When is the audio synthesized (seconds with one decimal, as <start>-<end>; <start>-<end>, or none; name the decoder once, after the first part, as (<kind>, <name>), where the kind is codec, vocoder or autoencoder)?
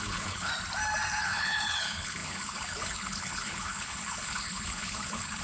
0.0-0.5 (codec, HILCodec); 1.2-5.4